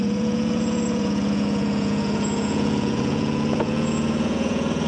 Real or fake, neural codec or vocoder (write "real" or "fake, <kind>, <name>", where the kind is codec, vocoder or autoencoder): fake, vocoder, Vocos